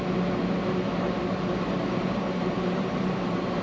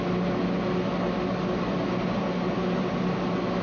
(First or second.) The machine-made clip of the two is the first